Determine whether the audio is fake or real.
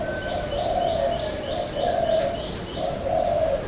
real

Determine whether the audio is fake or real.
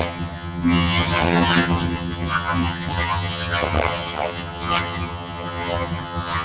fake